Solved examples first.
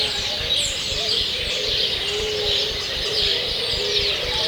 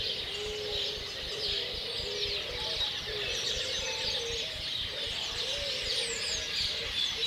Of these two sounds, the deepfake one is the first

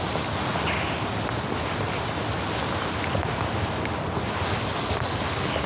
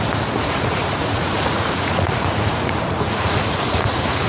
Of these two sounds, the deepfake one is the second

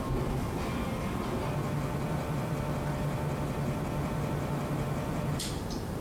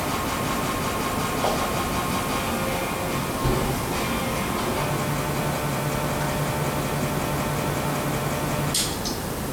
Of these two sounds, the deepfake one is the first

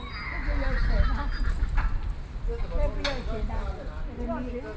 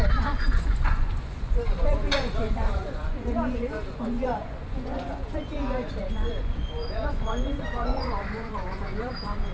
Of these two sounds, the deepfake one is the second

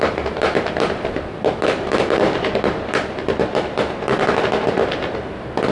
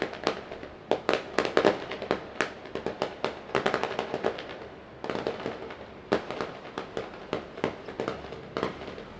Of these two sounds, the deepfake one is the first